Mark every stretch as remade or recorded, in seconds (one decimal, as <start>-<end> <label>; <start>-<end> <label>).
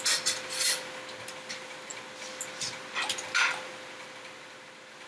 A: 0.0-5.1 recorded